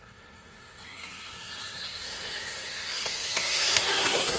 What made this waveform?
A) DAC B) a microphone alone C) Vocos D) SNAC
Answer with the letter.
D